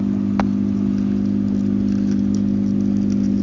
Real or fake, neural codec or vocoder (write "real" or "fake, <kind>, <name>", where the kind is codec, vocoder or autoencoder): real